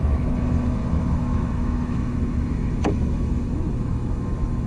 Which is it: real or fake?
fake